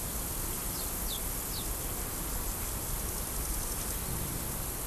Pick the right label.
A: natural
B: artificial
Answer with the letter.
A